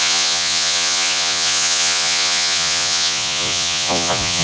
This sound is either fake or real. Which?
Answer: fake